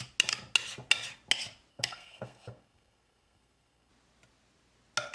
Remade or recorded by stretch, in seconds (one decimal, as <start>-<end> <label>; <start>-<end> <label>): 0.0-1.7 recorded; 1.7-3.9 remade; 3.9-5.1 recorded